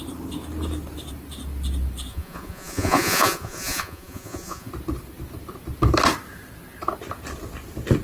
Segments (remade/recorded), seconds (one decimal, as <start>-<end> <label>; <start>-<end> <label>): 0.0-2.1 recorded; 2.1-4.7 remade; 4.7-8.0 recorded